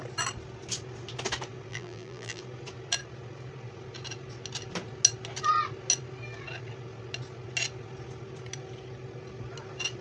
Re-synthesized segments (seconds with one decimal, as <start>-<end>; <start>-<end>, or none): 1.7-2.4